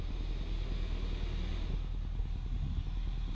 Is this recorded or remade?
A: recorded